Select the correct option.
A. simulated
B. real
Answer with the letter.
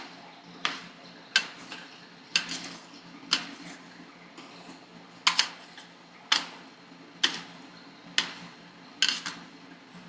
B